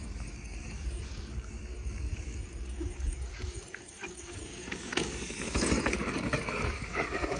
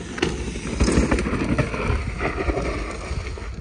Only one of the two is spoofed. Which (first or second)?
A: first